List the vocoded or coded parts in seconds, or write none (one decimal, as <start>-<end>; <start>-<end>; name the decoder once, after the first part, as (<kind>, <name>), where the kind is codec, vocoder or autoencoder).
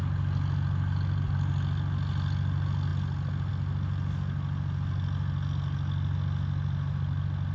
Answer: none